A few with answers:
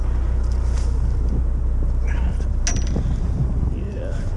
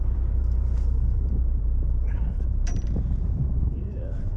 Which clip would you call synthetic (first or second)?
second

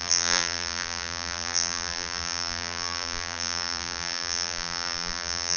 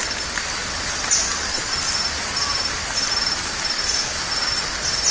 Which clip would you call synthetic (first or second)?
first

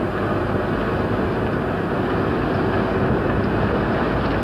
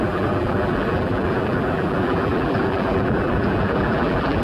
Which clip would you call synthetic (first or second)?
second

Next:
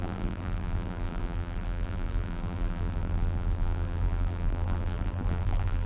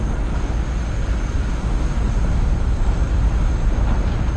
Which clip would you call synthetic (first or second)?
first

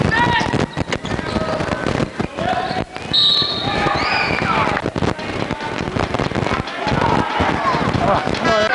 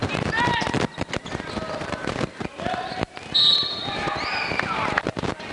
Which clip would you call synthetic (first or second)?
second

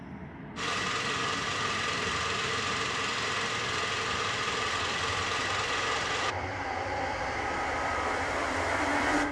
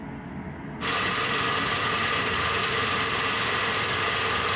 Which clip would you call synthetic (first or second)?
first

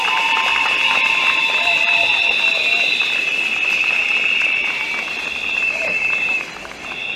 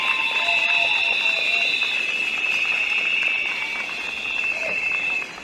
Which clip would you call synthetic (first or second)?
first